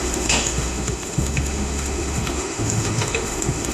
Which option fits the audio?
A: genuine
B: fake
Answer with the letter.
B